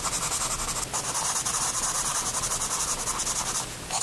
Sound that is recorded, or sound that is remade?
recorded